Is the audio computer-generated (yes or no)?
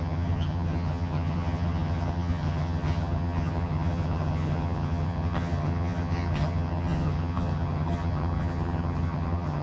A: yes